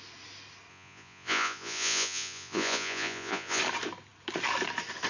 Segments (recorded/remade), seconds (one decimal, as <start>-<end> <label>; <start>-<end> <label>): 0.0-0.7 recorded; 0.7-3.6 remade; 3.6-5.1 recorded